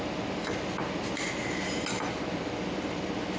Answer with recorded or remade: recorded